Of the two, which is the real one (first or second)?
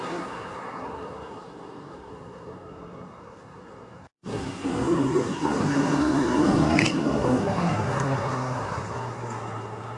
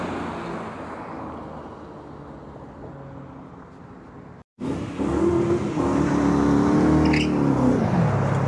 second